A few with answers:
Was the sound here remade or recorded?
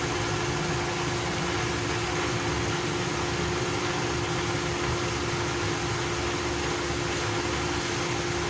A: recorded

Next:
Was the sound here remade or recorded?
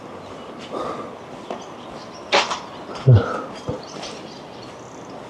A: recorded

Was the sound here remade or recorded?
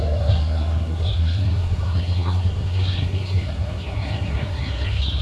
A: remade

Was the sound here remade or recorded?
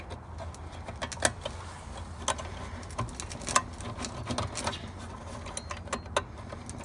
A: recorded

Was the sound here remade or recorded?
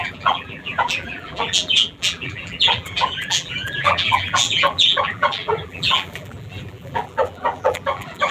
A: remade